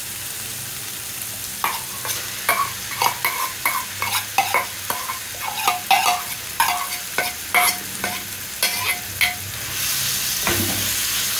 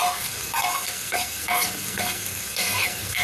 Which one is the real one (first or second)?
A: first